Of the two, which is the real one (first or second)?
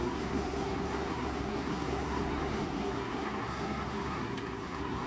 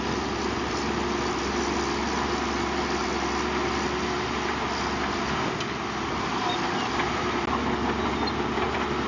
second